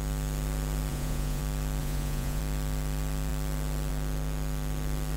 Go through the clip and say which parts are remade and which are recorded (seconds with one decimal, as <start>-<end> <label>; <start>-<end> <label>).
0.0-0.9 recorded; 0.9-1.4 remade; 1.4-1.8 recorded; 1.8-2.4 remade; 2.4-5.2 recorded